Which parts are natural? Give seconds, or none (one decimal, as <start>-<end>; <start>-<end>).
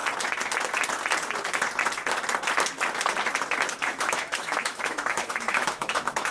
0.0-3.8